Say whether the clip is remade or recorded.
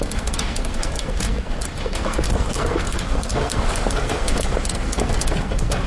remade